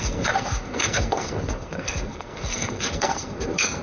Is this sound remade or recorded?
remade